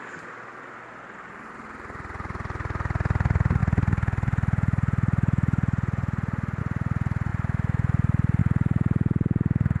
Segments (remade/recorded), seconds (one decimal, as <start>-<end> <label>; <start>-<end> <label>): 0.0-3.6 recorded; 3.6-6.6 remade; 6.6-9.8 recorded

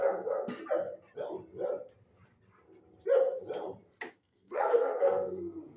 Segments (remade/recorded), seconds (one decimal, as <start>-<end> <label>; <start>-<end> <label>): 0.0-0.6 remade; 0.6-4.1 recorded; 4.1-5.8 remade